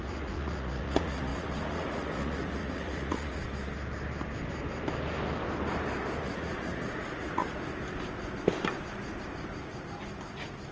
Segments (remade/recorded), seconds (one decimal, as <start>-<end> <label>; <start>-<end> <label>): 0.0-3.4 remade; 3.4-6.2 recorded; 6.2-7.4 remade; 7.4-10.7 recorded